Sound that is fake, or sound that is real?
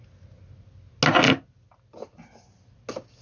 real